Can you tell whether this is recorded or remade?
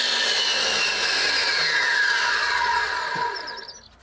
recorded